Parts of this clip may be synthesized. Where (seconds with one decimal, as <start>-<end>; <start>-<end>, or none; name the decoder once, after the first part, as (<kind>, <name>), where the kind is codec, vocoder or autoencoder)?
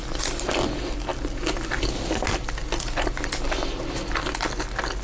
none